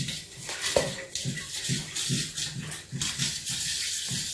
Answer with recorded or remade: recorded